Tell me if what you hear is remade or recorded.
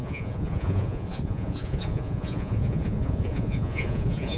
remade